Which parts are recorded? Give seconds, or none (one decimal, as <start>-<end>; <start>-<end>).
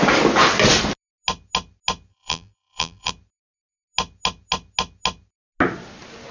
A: 0.0-2.1; 3.1-6.3